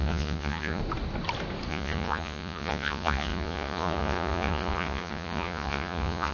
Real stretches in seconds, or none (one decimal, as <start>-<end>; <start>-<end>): 0.8-1.7